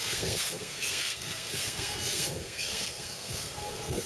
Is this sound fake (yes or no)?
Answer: yes